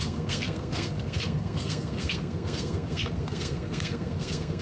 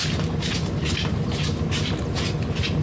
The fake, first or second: first